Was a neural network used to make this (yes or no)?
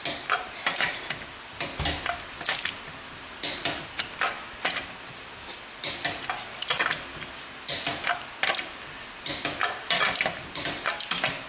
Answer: no